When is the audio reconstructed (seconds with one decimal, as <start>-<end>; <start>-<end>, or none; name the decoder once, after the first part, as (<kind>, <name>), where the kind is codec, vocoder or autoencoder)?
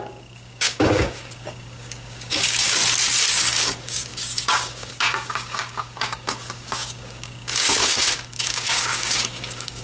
0.0-2.8 (codec, DAC); 3.3-9.8